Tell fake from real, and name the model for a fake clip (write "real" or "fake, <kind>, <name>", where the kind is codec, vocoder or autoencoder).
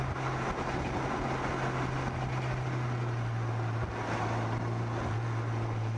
real